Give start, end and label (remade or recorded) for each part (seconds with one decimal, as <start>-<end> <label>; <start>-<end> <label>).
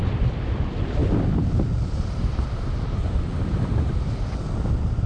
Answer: 0.0-5.1 recorded